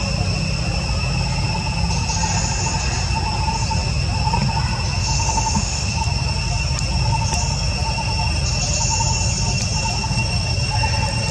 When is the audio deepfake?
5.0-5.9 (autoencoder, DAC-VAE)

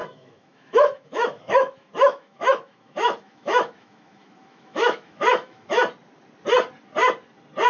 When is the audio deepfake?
0.0-5.8 (autoencoder, DAC-VAE)